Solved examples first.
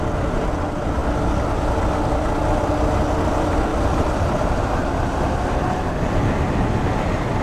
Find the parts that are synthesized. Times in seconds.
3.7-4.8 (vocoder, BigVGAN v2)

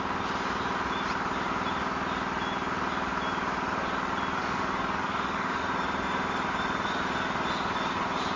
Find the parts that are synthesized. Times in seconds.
4.4-5.6 (codec, DAC)

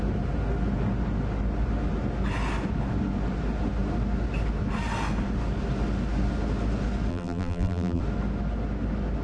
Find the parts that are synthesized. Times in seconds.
7.1-8.0 (vocoder, BigVGAN v2)